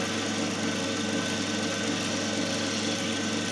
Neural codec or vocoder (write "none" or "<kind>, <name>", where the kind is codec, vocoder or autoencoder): none